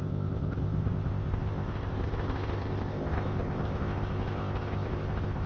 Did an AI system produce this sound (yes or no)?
yes